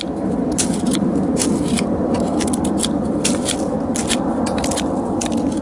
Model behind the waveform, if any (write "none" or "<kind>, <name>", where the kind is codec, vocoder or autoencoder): vocoder, BigVGAN v2